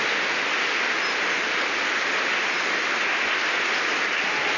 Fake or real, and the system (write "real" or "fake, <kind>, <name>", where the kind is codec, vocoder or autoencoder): real